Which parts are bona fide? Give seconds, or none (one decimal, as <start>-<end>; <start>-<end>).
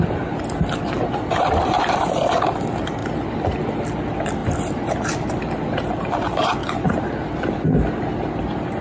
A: 0.0-3.0; 3.7-4.4; 5.3-6.6; 7.3-8.8